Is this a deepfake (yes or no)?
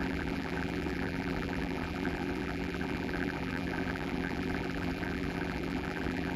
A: yes